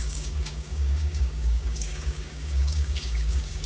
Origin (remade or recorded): remade